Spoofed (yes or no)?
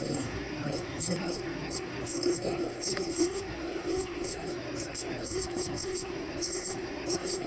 yes